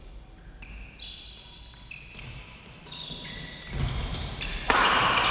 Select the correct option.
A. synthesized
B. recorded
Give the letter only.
B